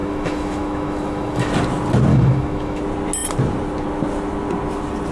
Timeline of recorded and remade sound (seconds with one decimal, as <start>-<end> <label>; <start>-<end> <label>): 0.0-1.5 remade; 1.5-2.1 recorded; 2.1-2.8 remade; 2.8-5.1 recorded